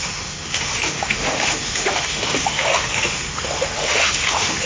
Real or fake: fake